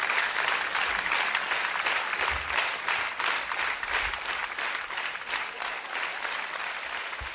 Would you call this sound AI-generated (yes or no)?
no